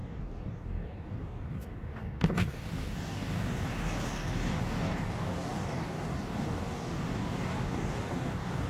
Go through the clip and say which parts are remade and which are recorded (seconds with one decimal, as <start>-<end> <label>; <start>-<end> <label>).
0.0-8.7 remade